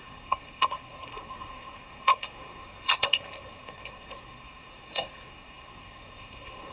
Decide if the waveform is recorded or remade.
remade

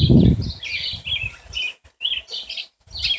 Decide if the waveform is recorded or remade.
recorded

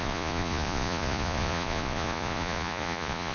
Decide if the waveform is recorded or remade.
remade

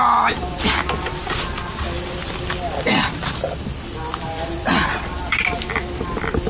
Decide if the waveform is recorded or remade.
recorded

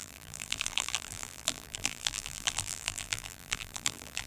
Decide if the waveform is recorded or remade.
remade